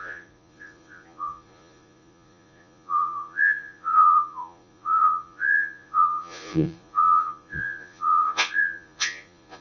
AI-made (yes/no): yes